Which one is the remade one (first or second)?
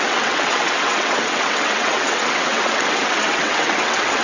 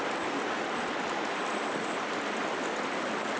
first